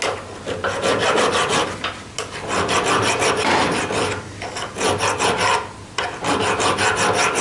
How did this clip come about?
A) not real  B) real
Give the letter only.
B